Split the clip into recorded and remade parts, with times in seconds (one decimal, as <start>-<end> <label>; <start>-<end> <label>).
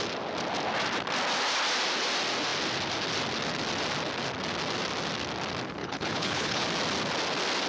0.0-5.8 recorded; 5.8-6.6 remade; 6.6-7.7 recorded